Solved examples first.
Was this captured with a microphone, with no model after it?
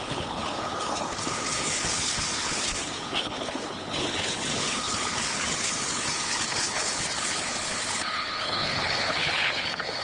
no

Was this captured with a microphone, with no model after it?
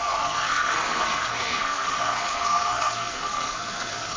no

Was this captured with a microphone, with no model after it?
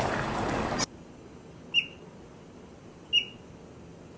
yes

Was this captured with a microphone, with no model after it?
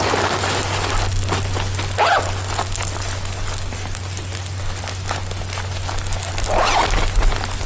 yes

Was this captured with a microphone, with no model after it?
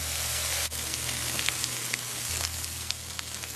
no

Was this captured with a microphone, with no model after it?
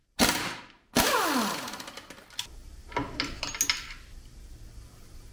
yes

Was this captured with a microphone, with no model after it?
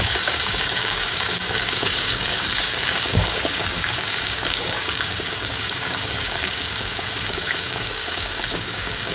no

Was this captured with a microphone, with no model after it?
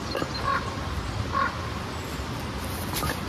yes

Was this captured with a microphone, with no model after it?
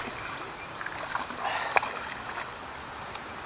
yes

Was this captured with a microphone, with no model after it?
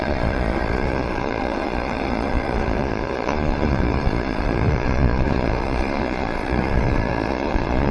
no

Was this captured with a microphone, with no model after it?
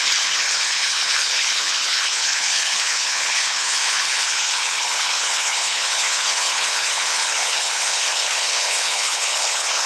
no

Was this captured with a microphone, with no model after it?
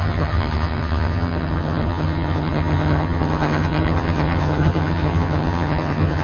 no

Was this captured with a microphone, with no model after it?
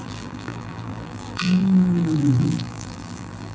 no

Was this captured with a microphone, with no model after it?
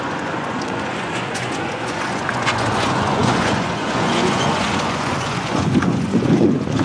no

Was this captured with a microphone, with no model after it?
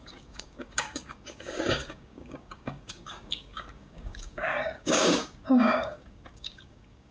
no